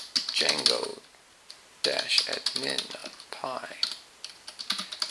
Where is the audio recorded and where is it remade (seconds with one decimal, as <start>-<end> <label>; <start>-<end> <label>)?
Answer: 0.0-0.9 recorded; 0.9-1.5 remade; 1.5-3.0 recorded; 3.0-3.9 remade; 3.9-5.1 recorded